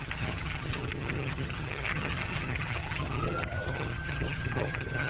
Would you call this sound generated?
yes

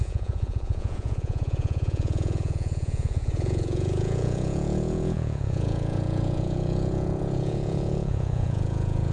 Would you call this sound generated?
yes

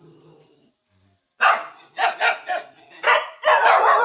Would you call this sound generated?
no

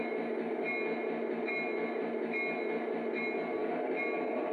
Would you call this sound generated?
no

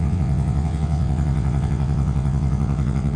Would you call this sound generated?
yes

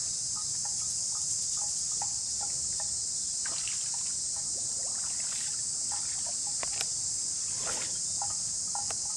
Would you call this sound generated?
no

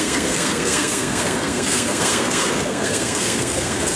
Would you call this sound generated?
yes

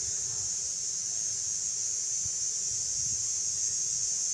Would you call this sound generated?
no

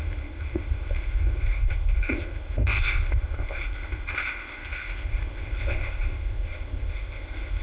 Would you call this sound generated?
yes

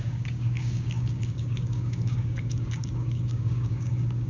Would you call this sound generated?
yes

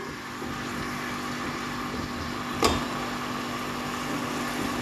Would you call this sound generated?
no